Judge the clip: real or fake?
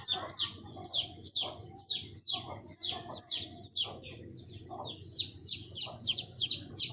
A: fake